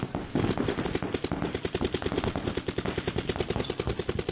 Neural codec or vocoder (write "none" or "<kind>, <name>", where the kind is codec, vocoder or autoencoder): none